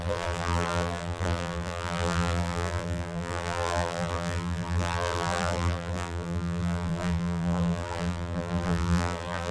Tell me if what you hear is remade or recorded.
remade